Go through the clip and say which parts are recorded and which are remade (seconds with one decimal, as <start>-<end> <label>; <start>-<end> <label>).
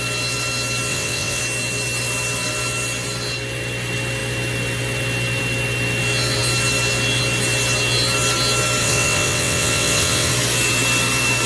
0.0-0.9 recorded; 0.9-1.4 remade; 1.4-8.8 recorded; 8.8-10.3 remade; 10.3-11.5 recorded